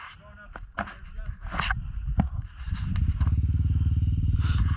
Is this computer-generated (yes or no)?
no